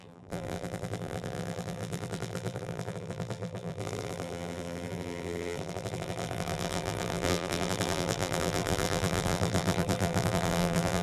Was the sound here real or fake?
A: fake